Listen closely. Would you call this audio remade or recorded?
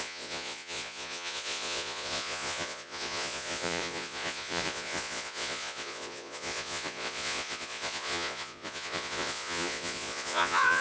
remade